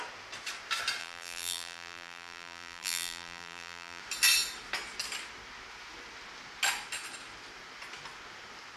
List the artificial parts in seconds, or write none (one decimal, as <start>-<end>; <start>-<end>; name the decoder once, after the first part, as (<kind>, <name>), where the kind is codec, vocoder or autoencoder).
1.0-4.0 (vocoder, BigVGAN v2)

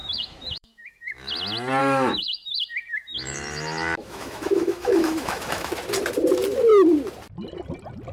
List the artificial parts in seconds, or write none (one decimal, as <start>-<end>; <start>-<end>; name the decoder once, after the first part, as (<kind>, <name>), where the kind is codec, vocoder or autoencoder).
0.0-1.3 (autoencoder, DAC-VAE); 1.8-5.7

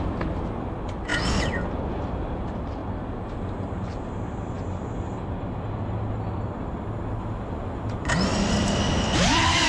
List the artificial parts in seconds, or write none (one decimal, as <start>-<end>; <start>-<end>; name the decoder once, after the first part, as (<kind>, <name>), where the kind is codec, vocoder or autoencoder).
0.0-1.1 (vocoder, BigVGAN v2); 1.9-2.8; 7.2-9.7

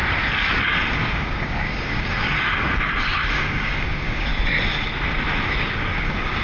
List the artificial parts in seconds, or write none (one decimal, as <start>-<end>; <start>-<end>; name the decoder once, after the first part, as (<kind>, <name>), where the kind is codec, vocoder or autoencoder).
1.0-4.3 (codec, DAC); 5.5-6.4

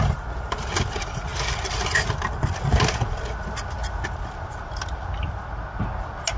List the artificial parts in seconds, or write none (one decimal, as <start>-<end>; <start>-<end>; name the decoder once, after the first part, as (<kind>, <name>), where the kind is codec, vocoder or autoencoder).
none

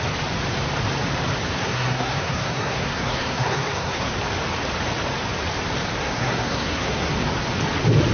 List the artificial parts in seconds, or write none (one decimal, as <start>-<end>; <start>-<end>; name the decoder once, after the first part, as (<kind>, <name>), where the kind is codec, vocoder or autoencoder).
1.5-4.1 (codec, SNAC); 6.0-7.1

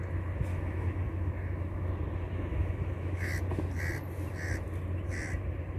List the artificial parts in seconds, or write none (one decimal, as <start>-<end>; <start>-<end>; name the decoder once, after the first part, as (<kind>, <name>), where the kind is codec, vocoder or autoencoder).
0.5-1.9 (autoencoder, DAC-VAE); 2.5-3.3

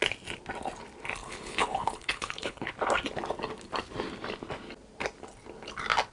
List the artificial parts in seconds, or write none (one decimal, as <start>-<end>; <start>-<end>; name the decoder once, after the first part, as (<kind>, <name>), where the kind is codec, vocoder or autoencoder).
1.2-2.7 (codec, HILCodec)